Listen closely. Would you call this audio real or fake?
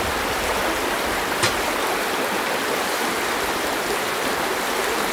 real